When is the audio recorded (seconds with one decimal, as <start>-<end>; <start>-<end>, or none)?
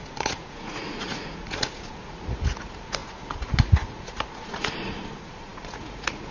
none